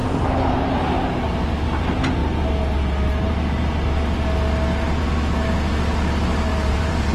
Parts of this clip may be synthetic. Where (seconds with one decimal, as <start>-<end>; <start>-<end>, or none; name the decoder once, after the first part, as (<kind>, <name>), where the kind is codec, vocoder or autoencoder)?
0.0-0.8 (vocoder, BigVGAN v2); 6.5-7.1